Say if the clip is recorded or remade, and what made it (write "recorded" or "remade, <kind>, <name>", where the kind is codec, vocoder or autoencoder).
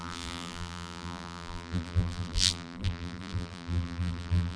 remade, vocoder, BigVGAN v2